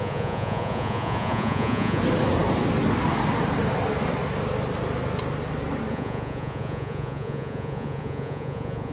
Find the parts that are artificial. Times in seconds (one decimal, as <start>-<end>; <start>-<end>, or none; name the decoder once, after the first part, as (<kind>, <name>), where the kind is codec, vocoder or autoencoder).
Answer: 0.0-2.0 (vocoder, Vocos); 5.9-8.9